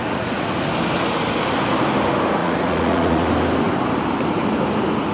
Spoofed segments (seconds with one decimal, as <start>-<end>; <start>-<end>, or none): 0.0-0.7; 2.4-3.3